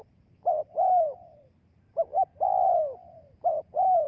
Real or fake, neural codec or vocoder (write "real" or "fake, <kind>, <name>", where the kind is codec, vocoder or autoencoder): fake, vocoder, BigVGAN v2